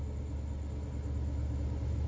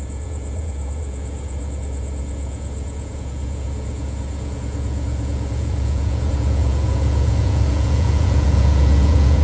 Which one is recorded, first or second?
first